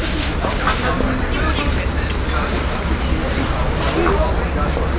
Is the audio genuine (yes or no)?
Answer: yes